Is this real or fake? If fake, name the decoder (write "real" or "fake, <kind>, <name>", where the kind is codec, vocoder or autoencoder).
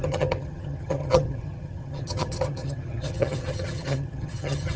fake, vocoder, HiFi-GAN